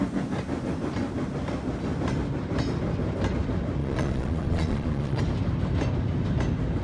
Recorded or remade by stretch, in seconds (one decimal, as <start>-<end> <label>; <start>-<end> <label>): 0.0-3.8 recorded; 3.8-5.2 remade; 5.2-6.8 recorded